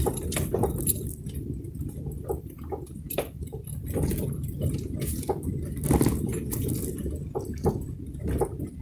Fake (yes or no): no